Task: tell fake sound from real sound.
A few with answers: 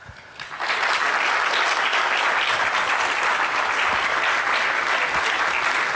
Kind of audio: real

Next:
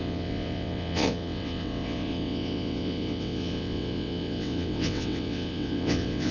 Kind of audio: fake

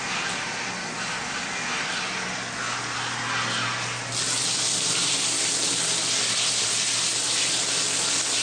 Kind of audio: real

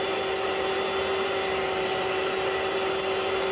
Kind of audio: real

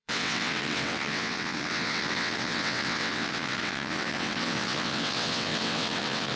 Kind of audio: fake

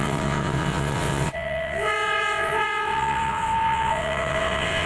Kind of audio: fake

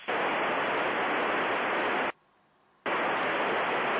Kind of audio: real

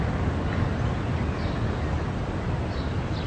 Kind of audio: real